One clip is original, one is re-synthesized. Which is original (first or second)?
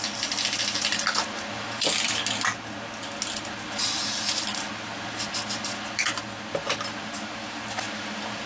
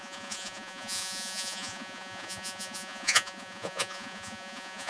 first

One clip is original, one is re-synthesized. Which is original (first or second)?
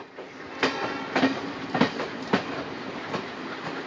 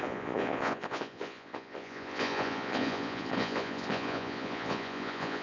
first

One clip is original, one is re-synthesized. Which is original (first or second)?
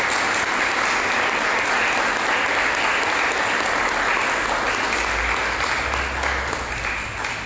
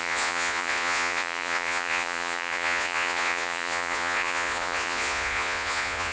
first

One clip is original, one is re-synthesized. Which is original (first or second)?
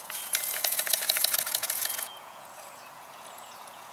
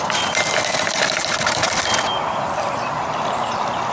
second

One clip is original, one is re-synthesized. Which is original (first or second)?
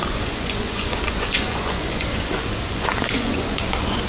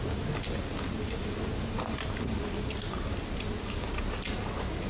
second